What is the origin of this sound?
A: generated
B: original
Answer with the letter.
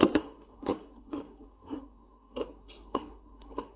A